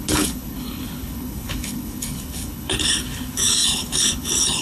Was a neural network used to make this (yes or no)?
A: yes